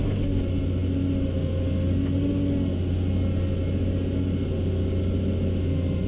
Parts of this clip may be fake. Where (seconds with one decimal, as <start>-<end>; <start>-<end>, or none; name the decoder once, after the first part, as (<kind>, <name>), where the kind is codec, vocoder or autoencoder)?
none